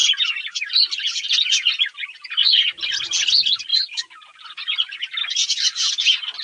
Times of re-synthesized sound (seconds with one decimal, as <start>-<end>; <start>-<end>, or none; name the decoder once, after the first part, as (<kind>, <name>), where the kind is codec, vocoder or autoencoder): none